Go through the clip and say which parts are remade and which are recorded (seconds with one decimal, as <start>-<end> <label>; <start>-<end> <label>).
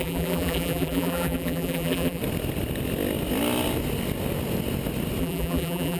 0.0-2.2 remade; 2.2-5.2 recorded; 5.2-6.0 remade